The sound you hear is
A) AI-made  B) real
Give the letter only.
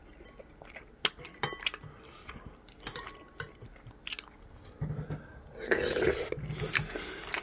B